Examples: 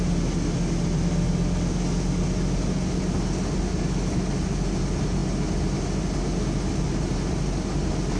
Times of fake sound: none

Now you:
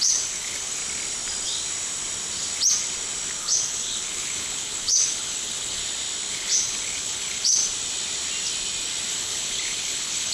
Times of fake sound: 0.0-0.8 (codec, HILCodec); 3.4-5.8; 6.3-7.6; 9.1-10.3

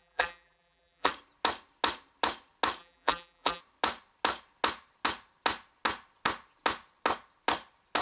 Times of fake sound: 0.0-1.1 (vocoder, BigVGAN v2); 2.8-3.6

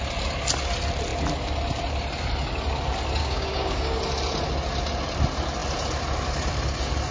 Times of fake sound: 3.2-4.0 (codec, DAC)

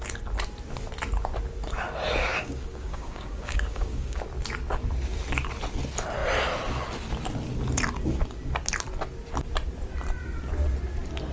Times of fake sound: 2.2-4.2 (codec, DAC)

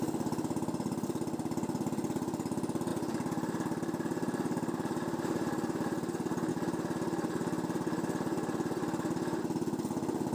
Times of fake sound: 2.9-6.5 (vocoder, BigVGAN v2)

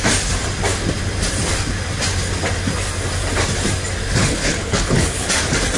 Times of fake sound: 4.2-5.3 (codec, HILCodec)